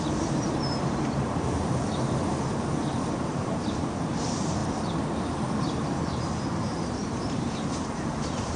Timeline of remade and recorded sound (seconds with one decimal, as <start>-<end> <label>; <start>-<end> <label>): 0.0-8.6 remade